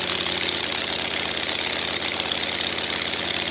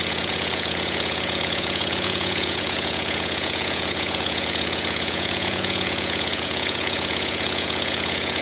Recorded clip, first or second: first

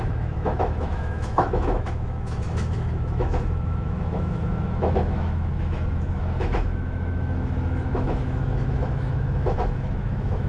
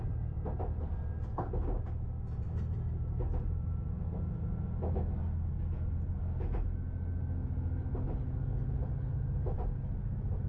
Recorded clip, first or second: second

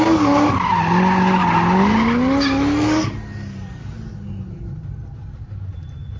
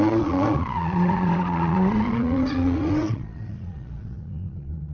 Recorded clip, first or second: first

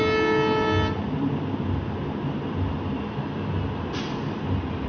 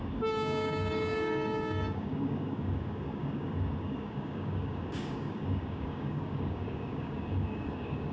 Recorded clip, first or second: first